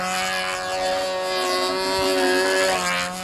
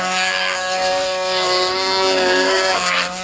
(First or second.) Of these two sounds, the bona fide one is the first